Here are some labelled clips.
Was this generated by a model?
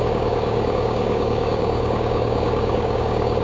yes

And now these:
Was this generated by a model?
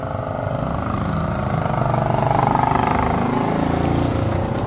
no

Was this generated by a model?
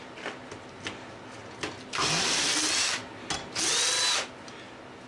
no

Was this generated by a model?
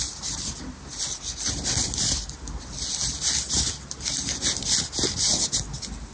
no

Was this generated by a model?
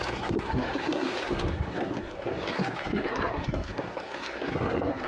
yes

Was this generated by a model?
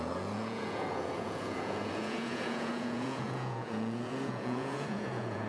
yes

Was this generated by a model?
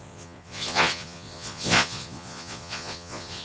yes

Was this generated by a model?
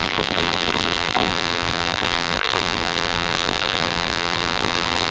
yes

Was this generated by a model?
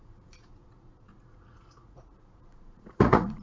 yes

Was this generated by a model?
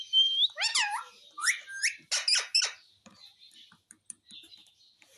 no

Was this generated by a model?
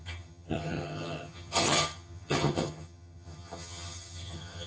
yes